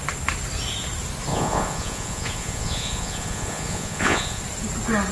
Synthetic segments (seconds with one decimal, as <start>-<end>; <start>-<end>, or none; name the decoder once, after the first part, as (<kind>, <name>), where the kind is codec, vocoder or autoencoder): 1.3-4.4 (vocoder, Vocos)